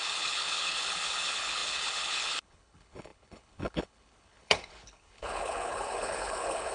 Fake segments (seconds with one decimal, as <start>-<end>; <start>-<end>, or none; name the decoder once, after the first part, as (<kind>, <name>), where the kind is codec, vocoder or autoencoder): 0.0-6.7 (codec, HILCodec)